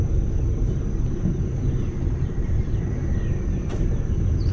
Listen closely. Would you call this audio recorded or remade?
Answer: recorded